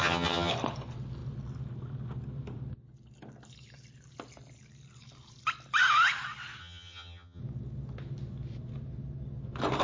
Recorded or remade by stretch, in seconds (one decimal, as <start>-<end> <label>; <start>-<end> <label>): 0.0-0.5 remade; 0.5-6.6 recorded; 6.6-7.4 remade; 7.4-9.8 recorded